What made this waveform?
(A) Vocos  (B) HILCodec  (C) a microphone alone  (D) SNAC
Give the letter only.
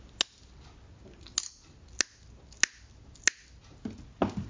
C